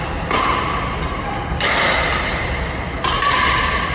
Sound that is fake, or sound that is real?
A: real